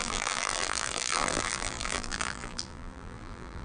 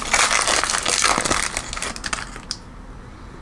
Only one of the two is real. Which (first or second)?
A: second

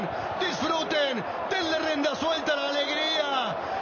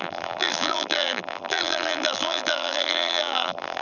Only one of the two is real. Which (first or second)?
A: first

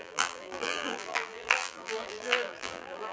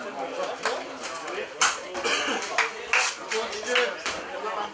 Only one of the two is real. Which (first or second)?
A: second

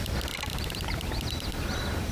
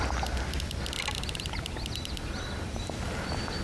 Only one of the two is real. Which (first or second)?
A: second